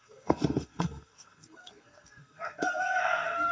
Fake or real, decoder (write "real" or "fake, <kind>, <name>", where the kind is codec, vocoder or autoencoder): fake, codec, SNAC